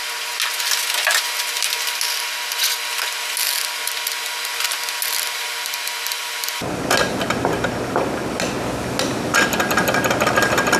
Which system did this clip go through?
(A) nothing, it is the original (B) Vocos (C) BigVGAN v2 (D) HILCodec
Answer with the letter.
A